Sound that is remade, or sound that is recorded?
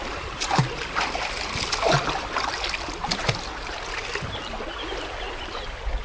recorded